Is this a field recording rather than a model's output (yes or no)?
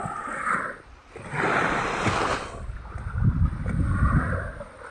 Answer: yes